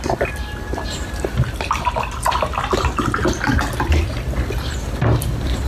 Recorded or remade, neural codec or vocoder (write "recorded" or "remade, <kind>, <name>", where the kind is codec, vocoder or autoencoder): recorded